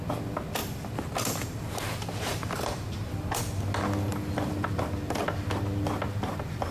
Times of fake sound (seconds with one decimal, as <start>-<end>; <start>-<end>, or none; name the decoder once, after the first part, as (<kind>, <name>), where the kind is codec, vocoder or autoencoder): 0.6-3.4 (vocoder, BigVGAN v2); 4.1-4.8

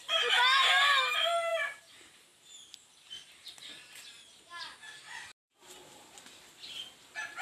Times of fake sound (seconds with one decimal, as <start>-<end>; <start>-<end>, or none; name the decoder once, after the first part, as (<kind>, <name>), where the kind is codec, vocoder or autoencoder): 1.5-3.5 (vocoder, BigVGAN v2)

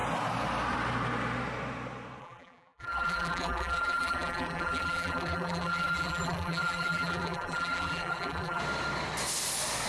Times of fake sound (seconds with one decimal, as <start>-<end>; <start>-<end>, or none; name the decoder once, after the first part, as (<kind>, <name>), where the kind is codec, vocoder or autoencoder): 2.2-8.6 (vocoder, BigVGAN v2)

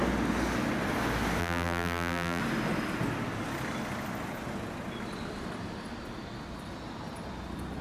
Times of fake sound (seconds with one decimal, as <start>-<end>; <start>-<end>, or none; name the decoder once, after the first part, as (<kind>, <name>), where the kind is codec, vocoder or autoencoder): 1.4-2.4 (vocoder, BigVGAN v2)

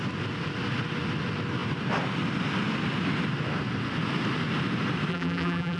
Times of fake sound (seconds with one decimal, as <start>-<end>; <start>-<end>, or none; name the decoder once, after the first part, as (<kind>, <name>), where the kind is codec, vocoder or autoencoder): 5.1-5.8 (vocoder, BigVGAN v2)

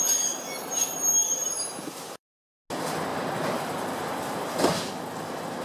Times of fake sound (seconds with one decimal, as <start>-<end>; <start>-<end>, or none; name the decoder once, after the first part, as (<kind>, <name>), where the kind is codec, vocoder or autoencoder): 1.2-2.3 (vocoder, BigVGAN v2); 3.1-4.0